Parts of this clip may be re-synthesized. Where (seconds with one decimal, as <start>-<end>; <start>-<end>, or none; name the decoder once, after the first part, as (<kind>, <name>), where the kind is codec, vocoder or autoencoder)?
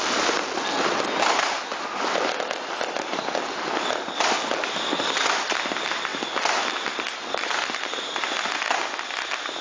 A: none